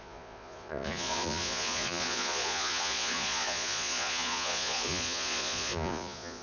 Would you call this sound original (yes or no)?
no